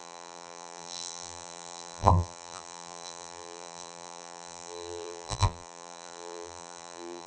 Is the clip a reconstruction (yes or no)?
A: yes